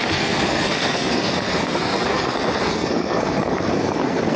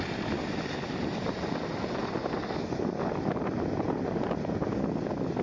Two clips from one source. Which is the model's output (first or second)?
first